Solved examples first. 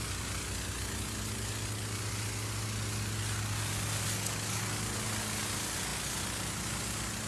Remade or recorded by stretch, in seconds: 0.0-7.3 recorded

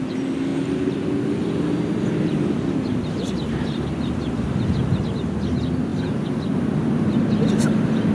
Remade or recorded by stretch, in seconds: 0.0-8.1 recorded